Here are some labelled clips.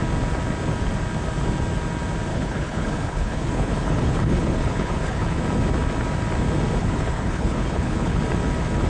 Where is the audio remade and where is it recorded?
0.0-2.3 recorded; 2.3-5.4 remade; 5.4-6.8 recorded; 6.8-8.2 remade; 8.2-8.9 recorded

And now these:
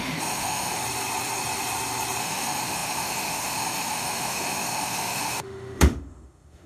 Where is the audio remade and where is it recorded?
0.0-0.8 remade; 0.8-2.2 recorded; 2.2-6.7 remade

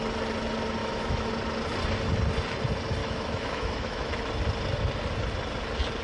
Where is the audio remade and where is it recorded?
0.0-0.8 recorded; 0.8-1.3 remade; 1.3-3.0 recorded; 3.0-4.2 remade; 4.2-6.0 recorded